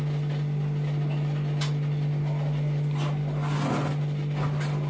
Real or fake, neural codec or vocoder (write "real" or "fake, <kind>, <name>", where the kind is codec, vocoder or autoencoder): real